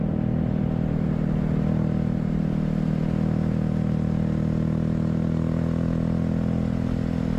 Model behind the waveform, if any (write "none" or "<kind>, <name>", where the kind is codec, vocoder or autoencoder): none